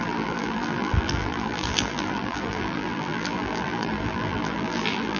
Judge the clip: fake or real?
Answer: fake